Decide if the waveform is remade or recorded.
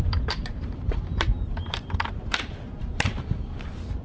remade